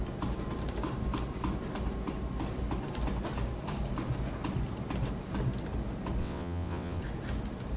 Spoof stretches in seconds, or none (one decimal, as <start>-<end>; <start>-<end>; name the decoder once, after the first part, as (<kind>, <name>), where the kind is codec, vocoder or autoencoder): 6.2-7.0 (vocoder, WaveNeXt)